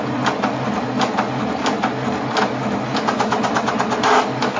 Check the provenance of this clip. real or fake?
real